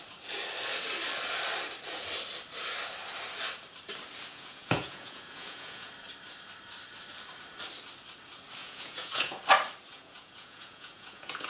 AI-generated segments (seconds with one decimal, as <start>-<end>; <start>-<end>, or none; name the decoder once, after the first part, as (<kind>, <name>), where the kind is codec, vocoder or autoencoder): 4.3-5.9 (vocoder, Vocos); 8.6-9.4; 9.9-11.5